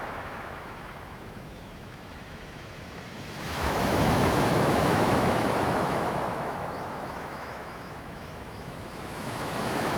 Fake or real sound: fake